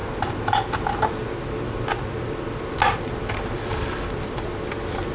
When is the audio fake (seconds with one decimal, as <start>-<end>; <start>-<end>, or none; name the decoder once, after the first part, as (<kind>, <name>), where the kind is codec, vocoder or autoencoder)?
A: none